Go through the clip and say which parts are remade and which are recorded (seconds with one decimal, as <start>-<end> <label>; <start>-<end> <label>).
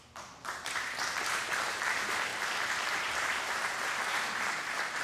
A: 0.0-2.3 remade; 2.3-2.9 recorded; 2.9-5.0 remade